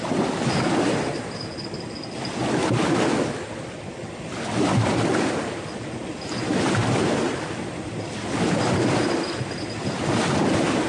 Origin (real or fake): real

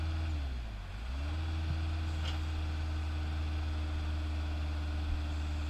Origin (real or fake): real